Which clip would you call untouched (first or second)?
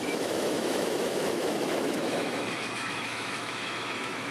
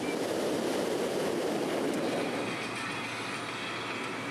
second